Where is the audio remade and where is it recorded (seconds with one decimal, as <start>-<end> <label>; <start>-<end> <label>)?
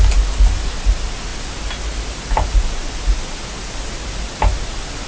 0.0-5.1 recorded